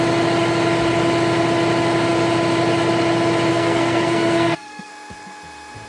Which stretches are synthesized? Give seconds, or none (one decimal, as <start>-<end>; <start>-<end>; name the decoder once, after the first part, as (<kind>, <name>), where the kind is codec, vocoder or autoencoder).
3.5-4.9 (codec, SNAC)